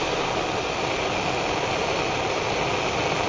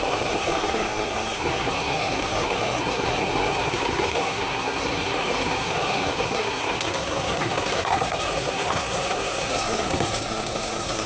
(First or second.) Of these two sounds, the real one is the first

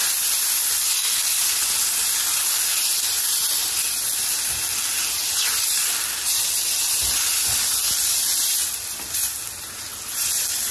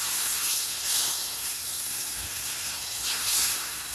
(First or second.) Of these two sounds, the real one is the first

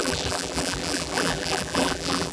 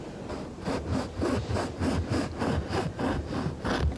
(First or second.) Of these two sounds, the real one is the second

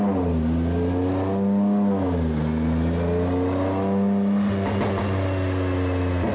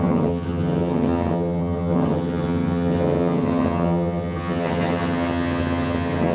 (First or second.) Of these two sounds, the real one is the first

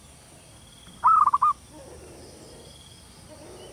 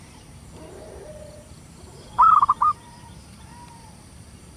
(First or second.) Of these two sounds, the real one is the first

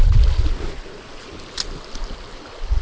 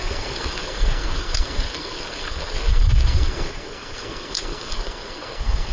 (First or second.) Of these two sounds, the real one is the first